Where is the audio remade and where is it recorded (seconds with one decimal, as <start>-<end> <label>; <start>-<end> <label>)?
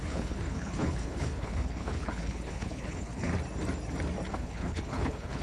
0.0-3.3 remade; 3.3-4.3 recorded; 4.3-5.4 remade